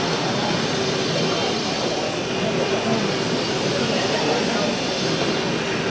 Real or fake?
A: real